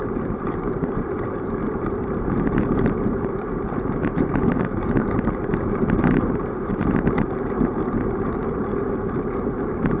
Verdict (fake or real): fake